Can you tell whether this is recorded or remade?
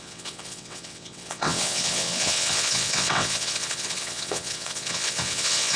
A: remade